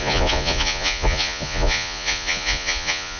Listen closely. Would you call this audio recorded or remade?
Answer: remade